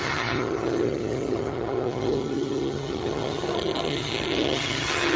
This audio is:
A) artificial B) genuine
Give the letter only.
A